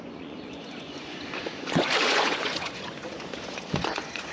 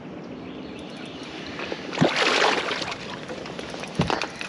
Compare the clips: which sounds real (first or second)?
second